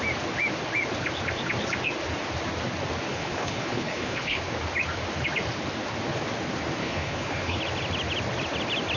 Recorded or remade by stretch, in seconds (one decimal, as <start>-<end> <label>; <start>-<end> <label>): 0.0-3.1 recorded; 3.1-4.5 remade; 4.5-6.8 recorded; 6.8-7.6 remade; 7.6-9.0 recorded